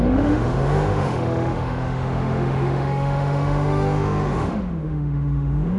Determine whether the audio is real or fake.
fake